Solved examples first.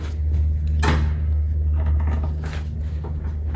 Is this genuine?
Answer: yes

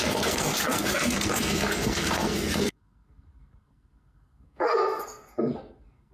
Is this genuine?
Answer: no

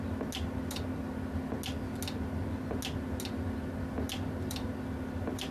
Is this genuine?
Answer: yes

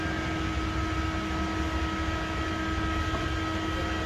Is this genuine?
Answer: yes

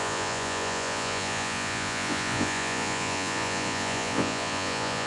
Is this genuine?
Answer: no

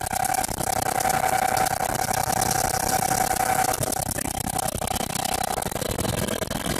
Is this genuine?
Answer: yes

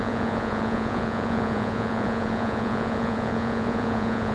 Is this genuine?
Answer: no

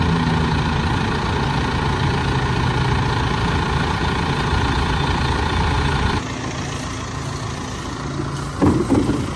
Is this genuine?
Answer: yes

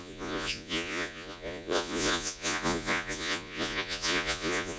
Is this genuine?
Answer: no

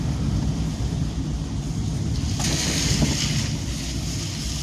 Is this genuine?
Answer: yes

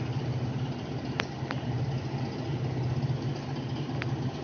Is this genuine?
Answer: yes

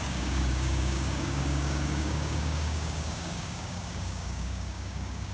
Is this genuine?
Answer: no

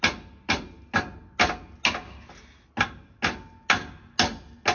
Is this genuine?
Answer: yes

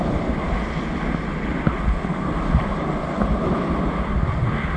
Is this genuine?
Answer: yes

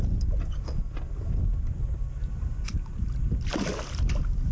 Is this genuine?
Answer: yes